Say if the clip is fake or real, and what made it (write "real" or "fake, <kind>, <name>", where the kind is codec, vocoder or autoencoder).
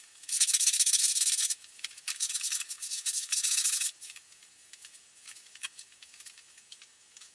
fake, autoencoder, DAC-VAE